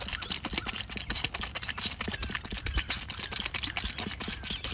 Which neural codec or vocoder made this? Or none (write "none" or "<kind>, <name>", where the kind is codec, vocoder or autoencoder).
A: none